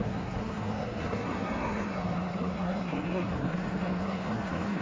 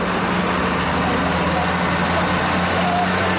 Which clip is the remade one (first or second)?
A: first